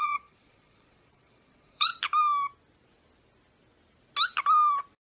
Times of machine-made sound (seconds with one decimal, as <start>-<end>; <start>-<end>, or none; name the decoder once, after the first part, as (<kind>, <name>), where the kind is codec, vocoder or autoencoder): 0.0-1.9 (vocoder, Vocos)